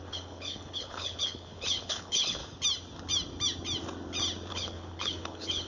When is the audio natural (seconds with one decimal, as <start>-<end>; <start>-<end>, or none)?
2.4-4.5